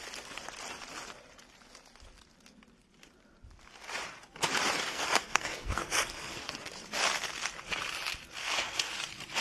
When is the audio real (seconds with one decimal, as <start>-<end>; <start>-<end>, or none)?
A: 0.0-4.9; 6.7-8.4; 8.9-9.4